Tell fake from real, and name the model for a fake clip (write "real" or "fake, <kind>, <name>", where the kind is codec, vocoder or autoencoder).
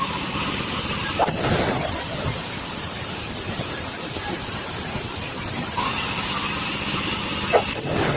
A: fake, vocoder, BigVGAN v2